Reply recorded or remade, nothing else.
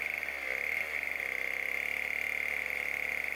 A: recorded